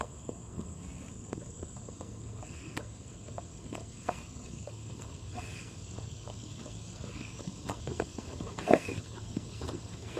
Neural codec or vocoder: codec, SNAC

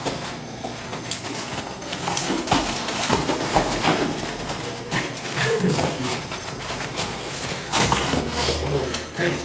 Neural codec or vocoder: codec, SNAC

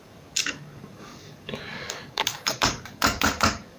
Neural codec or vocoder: codec, DAC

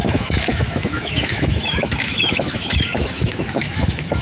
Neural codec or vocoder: autoencoder, DAC-VAE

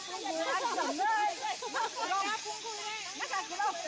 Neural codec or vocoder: none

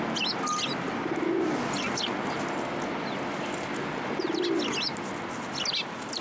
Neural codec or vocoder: none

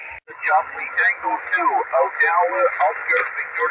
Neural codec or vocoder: none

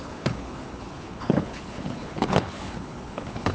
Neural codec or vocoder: codec, HILCodec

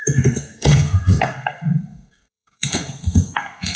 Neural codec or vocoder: codec, SNAC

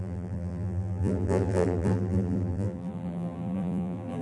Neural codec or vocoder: vocoder, BigVGAN v2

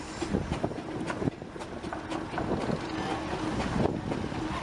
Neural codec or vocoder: none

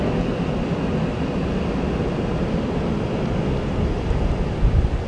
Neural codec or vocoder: none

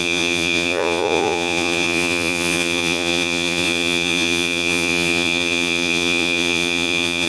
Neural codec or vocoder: vocoder, Vocos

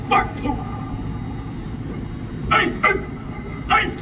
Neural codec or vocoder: none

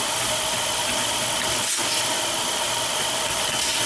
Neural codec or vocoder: none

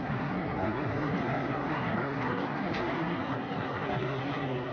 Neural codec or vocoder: codec, SNAC